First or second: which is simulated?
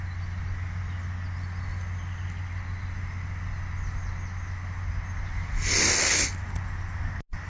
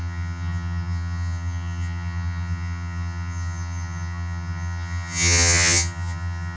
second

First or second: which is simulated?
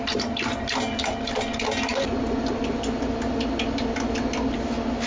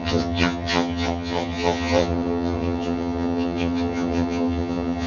second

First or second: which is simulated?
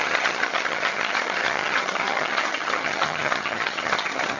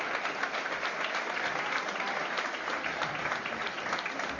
first